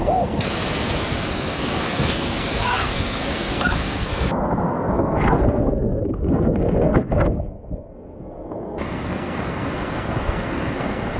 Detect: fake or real fake